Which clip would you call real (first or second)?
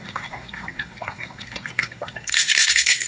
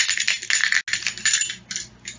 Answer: second